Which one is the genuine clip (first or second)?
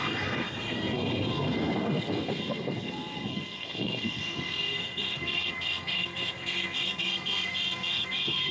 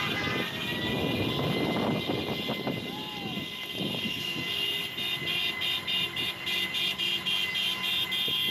second